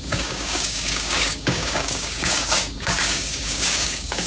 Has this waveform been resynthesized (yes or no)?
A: yes